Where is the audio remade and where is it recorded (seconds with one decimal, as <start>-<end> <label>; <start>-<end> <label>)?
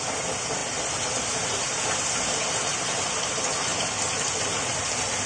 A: 0.0-5.3 recorded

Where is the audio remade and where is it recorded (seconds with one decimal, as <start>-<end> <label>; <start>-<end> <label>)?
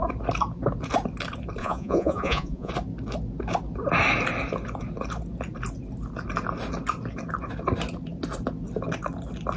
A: 0.0-1.6 recorded; 1.6-2.7 remade; 2.7-9.6 recorded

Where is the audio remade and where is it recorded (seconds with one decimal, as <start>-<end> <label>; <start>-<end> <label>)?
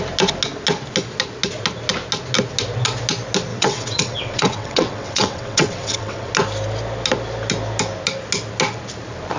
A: 0.0-3.5 recorded; 3.5-6.3 remade; 6.3-9.4 recorded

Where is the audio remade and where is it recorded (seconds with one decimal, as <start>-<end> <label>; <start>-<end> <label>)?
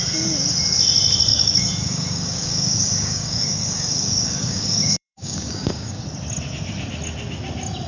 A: 0.0-1.3 recorded; 1.3-6.0 remade; 6.0-7.9 recorded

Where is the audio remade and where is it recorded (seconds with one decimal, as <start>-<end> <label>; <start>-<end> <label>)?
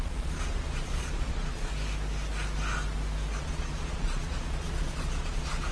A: 0.0-1.7 remade; 1.7-3.4 recorded; 3.4-5.7 remade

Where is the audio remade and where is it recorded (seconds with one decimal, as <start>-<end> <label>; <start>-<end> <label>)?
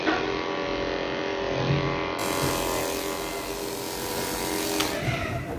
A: 0.0-5.6 recorded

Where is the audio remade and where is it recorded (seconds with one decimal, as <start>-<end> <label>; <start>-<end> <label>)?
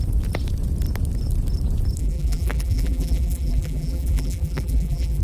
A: 0.0-2.0 recorded; 2.0-5.2 remade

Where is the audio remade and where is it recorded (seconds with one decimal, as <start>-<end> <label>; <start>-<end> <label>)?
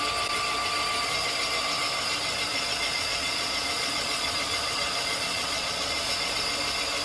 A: 0.0-2.5 recorded; 2.5-6.3 remade; 6.3-7.0 recorded